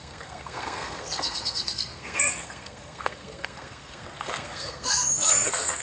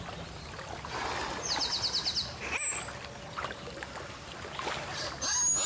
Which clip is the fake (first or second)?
first